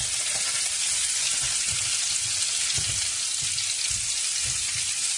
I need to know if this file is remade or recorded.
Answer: recorded